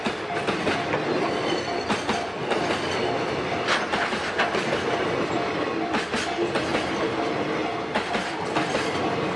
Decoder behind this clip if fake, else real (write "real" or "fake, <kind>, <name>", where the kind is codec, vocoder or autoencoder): real